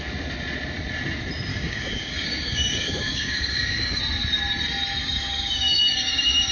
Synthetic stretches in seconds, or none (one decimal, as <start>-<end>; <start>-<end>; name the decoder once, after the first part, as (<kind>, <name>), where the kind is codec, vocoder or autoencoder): 1.5-4.0 (codec, DAC); 5.0-6.5